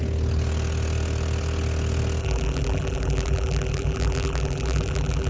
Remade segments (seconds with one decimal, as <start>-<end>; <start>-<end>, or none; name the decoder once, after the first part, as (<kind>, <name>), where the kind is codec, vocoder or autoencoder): 2.2-5.3 (vocoder, BigVGAN v2)